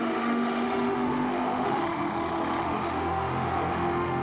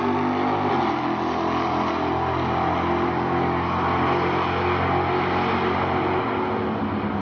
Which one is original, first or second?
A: second